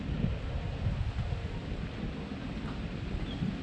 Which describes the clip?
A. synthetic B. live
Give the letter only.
B